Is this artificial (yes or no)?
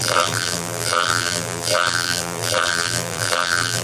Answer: yes